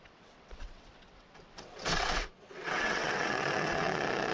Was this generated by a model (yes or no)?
yes